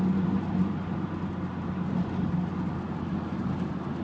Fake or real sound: real